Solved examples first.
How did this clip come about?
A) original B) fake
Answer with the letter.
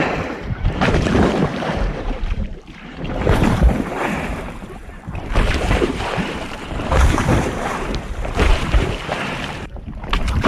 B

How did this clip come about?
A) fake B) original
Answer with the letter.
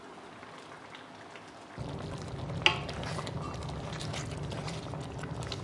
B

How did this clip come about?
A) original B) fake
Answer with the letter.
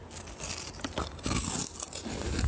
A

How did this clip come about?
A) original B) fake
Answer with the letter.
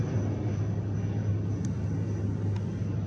A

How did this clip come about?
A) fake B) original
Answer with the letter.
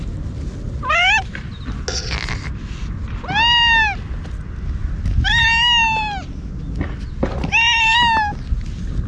B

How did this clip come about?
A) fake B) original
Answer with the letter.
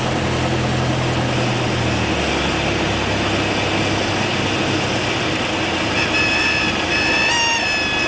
B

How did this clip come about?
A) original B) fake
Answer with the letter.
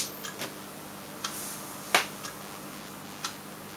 A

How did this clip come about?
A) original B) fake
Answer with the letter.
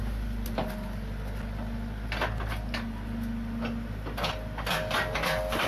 A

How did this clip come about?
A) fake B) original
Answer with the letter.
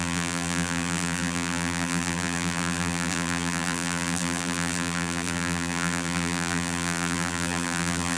A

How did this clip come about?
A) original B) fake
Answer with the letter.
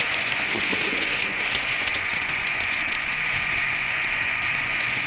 B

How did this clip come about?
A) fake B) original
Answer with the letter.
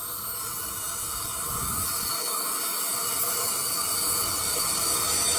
A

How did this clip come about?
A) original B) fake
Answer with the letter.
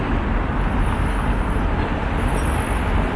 A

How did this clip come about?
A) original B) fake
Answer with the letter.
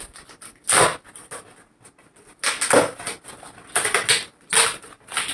A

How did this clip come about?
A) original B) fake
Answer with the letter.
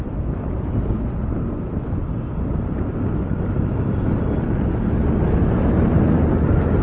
A